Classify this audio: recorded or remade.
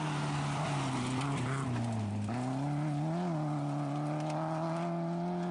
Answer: recorded